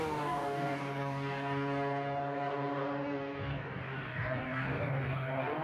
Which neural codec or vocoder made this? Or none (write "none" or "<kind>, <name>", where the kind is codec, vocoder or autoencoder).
codec, DAC